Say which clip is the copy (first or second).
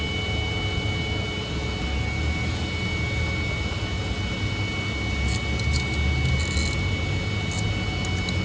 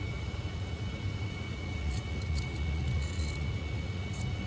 second